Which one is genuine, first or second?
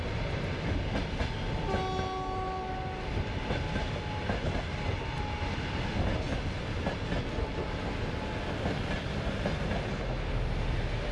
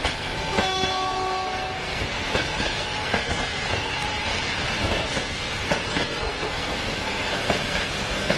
first